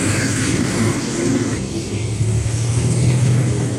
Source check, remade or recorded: remade